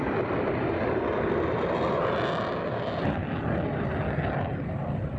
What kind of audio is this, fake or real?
real